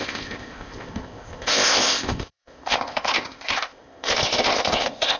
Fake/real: fake